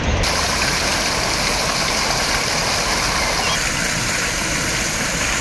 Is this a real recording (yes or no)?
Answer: yes